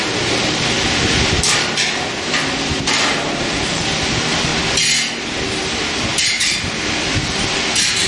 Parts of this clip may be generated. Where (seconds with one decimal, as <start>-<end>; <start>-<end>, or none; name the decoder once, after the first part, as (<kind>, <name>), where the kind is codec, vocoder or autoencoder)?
0.0-4.5 (vocoder, BigVGAN v2); 5.6-8.1